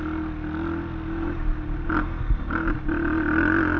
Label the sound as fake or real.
real